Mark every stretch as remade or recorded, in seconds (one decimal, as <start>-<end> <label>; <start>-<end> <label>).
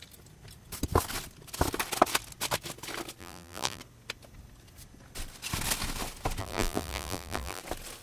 0.0-3.2 recorded; 3.2-3.8 remade; 3.8-6.4 recorded; 6.4-7.6 remade; 7.6-8.0 recorded